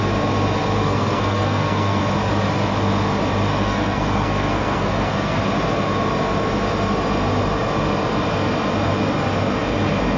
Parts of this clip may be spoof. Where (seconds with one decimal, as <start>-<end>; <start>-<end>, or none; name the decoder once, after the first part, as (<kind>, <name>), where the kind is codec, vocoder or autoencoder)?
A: 0.8-2.0 (codec, SNAC); 3.5-5.4